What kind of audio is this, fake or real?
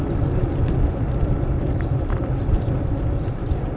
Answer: fake